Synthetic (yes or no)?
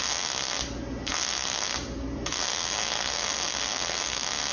no